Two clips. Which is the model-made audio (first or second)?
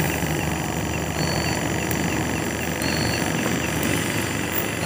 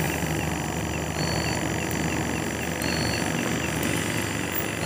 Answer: first